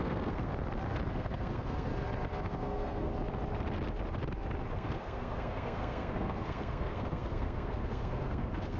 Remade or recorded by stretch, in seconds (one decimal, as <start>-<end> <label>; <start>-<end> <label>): 0.0-0.5 remade; 0.5-1.1 recorded; 1.1-1.9 remade; 1.9-2.4 recorded; 2.4-3.1 remade; 3.1-4.7 recorded; 4.7-8.8 remade